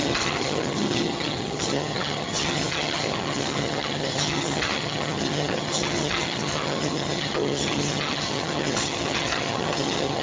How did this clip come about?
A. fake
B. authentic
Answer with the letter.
A